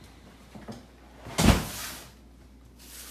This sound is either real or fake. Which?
real